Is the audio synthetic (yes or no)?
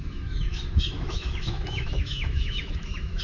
yes